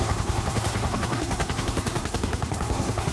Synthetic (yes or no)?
yes